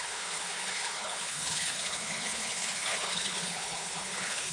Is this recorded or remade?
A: remade